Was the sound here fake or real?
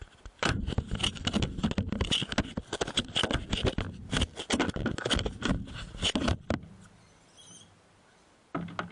real